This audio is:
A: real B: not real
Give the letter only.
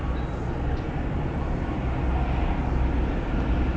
A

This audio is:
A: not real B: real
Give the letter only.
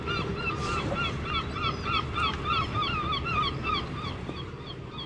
A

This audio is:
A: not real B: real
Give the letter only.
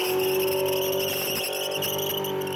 B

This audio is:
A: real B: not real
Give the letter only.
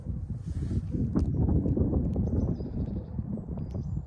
B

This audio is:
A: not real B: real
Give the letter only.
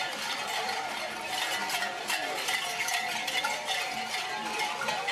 A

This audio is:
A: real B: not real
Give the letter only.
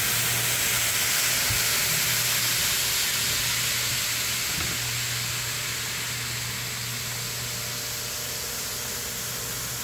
A